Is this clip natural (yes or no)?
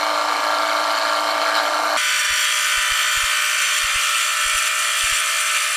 no